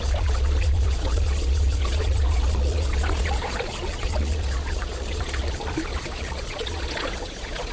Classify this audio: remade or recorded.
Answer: remade